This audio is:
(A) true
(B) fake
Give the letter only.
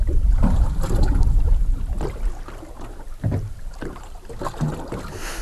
A